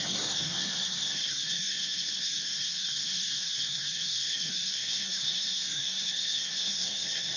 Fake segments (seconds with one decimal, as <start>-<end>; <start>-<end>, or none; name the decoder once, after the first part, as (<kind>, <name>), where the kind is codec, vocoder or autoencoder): 0.0-7.4 (codec, SNAC)